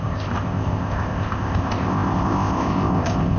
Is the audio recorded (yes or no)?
no